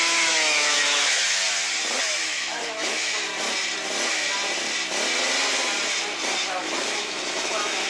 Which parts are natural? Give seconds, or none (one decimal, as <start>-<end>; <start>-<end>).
1.4-2.0; 3.3-6.6